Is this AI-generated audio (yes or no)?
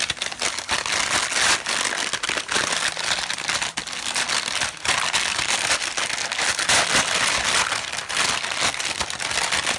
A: no